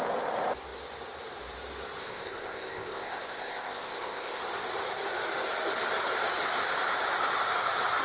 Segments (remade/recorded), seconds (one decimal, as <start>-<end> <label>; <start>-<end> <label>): 0.0-2.0 recorded; 2.0-4.4 remade; 4.4-8.0 recorded